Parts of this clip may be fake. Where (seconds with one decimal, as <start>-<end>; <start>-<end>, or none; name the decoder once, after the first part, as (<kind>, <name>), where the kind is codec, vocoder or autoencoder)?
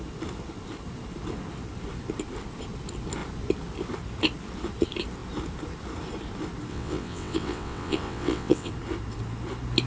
6.7-8.7 (vocoder, WaveNeXt)